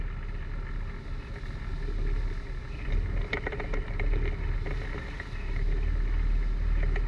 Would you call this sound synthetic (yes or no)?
no